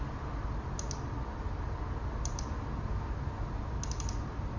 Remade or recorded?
recorded